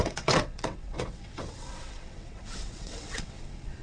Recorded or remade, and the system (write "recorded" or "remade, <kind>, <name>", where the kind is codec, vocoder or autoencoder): remade, vocoder, WaveNeXt